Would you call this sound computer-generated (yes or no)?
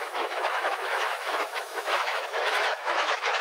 yes